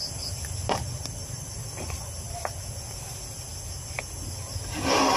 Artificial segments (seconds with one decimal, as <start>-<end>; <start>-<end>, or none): none